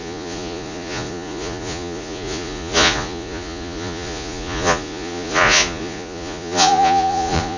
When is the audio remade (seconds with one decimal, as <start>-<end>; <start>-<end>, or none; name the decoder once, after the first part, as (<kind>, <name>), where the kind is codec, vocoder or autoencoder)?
0.0-7.6 (vocoder, Vocos)